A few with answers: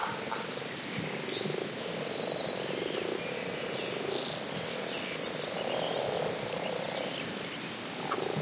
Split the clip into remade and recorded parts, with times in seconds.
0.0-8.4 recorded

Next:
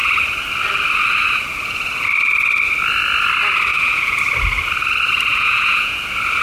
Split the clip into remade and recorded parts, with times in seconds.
0.0-3.7 recorded; 3.7-4.2 remade; 4.2-5.3 recorded; 5.3-6.0 remade; 6.0-6.4 recorded

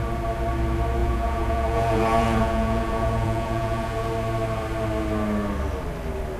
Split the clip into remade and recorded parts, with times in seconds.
0.0-1.0 recorded; 1.0-4.1 remade; 4.1-6.4 recorded

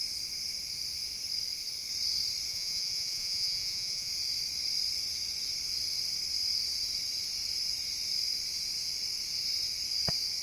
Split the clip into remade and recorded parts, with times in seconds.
0.0-2.5 recorded; 2.5-4.1 remade; 4.1-10.4 recorded

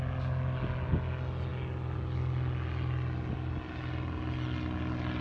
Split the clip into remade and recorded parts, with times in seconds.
0.0-5.2 recorded

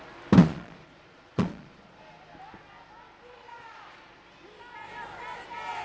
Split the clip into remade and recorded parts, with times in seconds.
0.0-0.4 recorded; 0.4-2.0 remade; 2.0-5.8 recorded